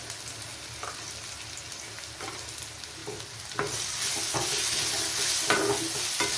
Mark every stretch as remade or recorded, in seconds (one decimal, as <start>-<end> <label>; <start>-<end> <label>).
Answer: 0.0-6.4 recorded